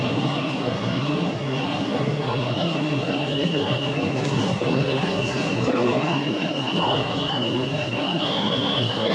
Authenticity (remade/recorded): remade